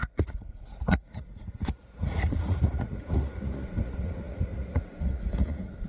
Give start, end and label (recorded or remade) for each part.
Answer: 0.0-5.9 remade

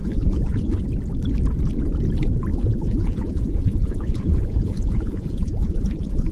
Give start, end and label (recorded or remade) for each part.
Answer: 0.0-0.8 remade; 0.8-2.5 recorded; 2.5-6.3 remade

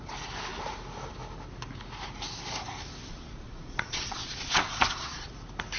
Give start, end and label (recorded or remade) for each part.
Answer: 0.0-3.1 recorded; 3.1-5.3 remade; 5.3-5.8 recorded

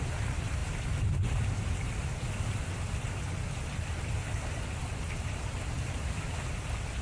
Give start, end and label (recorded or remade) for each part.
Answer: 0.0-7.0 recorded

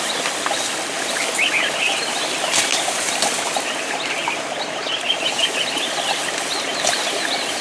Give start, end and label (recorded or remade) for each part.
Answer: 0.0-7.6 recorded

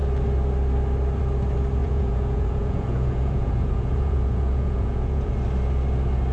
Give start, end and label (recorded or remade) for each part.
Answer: 0.0-1.8 recorded; 1.8-5.3 remade; 5.3-6.3 recorded